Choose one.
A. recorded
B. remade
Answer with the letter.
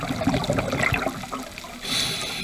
A